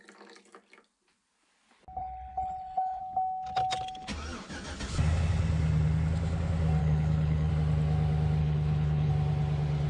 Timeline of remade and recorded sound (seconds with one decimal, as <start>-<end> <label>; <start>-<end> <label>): 0.0-2.0 recorded; 2.0-3.0 remade; 3.0-6.8 recorded; 6.8-7.5 remade; 7.5-8.4 recorded; 8.4-9.1 remade; 9.1-9.9 recorded